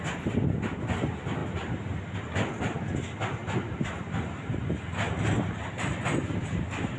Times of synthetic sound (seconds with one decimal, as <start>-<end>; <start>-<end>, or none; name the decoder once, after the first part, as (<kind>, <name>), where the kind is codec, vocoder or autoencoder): none